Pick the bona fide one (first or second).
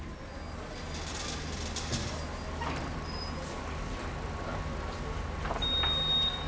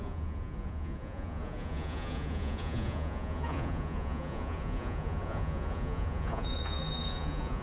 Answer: first